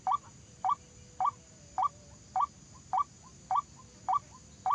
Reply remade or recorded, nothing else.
recorded